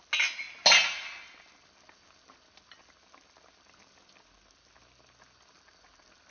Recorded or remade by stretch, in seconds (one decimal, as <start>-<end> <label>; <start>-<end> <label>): 0.0-6.3 recorded